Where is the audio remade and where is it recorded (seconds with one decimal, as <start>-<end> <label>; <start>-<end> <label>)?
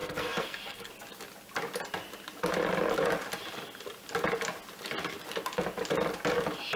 0.0-0.9 remade; 0.9-6.8 recorded